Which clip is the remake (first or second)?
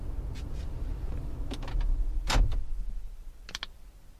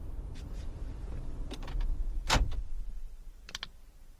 second